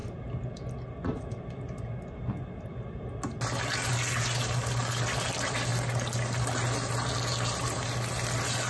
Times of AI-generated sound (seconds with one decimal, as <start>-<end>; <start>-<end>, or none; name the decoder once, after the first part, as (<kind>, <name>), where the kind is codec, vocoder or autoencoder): none